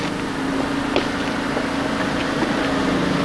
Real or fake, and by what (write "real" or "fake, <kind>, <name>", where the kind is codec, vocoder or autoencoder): real